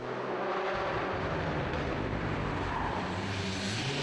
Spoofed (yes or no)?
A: no